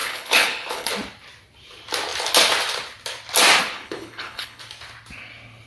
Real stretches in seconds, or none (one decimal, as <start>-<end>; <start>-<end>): 0.9-3.6; 4.6-5.7